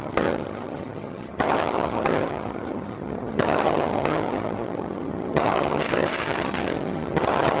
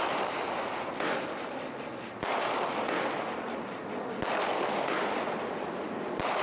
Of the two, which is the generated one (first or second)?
first